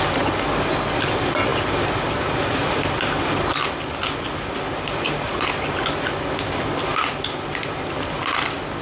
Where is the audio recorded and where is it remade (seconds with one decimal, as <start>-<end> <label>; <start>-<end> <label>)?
0.0-8.8 recorded